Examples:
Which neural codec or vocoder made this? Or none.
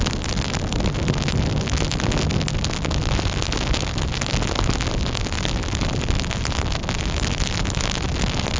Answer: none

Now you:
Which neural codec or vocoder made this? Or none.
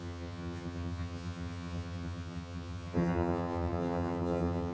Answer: vocoder, HiFi-GAN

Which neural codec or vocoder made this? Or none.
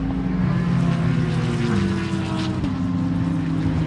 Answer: none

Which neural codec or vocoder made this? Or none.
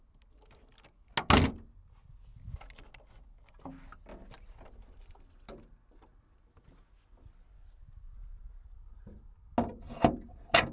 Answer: none